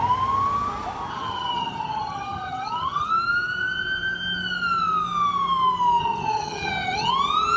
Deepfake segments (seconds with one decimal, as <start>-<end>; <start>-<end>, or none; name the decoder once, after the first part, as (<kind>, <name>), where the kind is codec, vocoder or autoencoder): 1.1-3.1 (vocoder, HiFi-GAN); 6.0-7.1